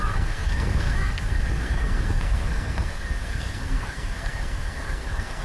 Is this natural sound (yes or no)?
no